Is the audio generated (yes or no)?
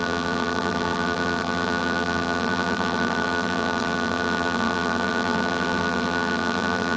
yes